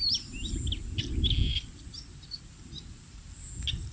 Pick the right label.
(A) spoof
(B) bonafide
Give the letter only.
B